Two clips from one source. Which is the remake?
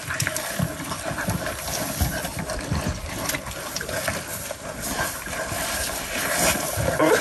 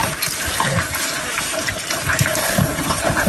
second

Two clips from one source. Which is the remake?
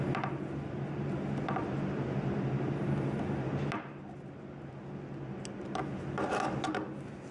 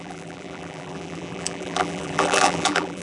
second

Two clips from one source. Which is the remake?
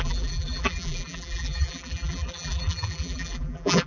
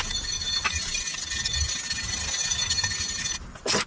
first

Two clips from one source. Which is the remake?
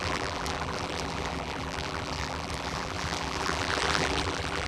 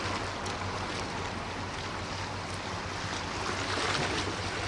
first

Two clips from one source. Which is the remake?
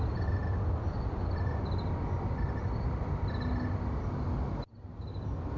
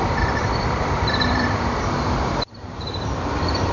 second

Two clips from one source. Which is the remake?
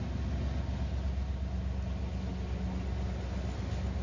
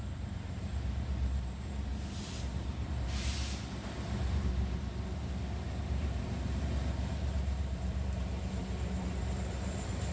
second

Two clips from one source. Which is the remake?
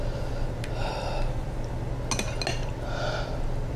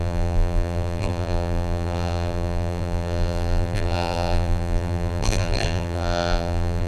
second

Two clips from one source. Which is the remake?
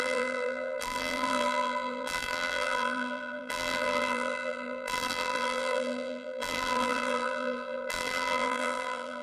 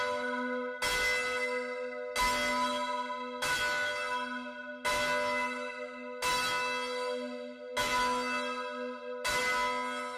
first